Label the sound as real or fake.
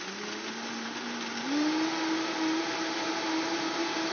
real